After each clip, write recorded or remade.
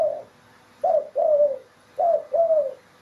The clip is recorded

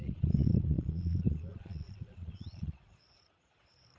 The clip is remade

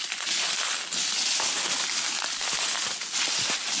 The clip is recorded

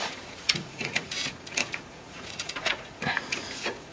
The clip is remade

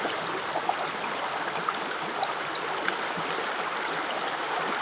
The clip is recorded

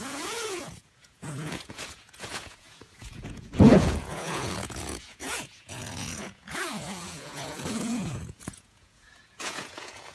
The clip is remade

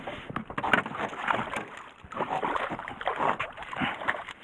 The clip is recorded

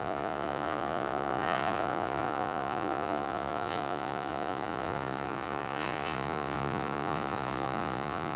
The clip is remade